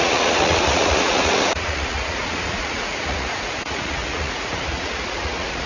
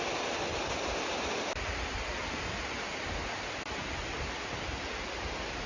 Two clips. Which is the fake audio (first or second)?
first